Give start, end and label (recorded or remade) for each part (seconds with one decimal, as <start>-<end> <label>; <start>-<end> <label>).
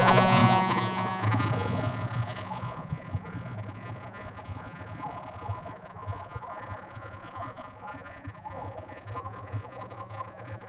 0.0-10.7 remade